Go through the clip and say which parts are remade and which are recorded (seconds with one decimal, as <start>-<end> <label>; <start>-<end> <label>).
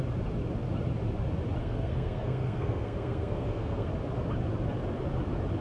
0.0-1.6 recorded; 1.6-3.9 remade; 3.9-5.6 recorded